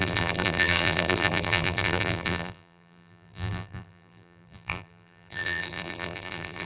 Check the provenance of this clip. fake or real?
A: fake